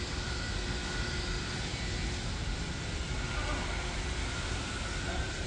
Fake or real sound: real